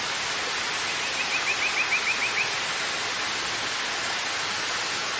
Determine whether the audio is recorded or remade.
recorded